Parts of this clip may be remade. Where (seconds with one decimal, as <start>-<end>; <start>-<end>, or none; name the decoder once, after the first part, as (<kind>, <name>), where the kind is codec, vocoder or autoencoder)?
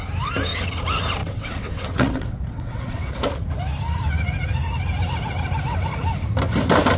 1.2-3.1 (vocoder, WaveNeXt)